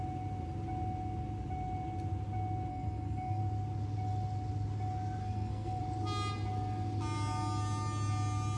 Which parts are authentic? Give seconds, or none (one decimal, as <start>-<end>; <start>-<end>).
0.0-2.7; 3.4-5.2; 5.8-8.6